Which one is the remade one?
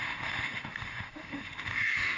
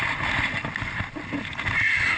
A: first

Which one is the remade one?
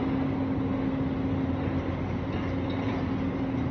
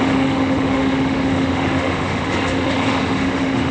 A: second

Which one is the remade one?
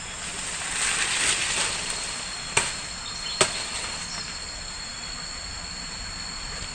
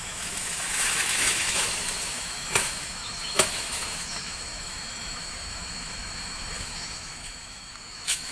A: second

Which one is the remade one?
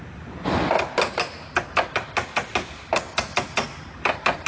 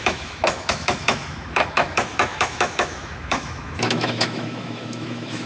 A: second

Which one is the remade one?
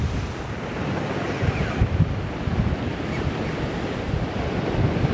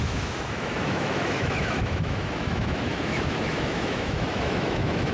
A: second